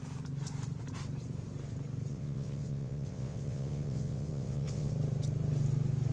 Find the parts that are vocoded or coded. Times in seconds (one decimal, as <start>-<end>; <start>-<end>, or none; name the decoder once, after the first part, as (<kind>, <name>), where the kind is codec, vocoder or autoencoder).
2.1-4.9 (vocoder, WaveNeXt)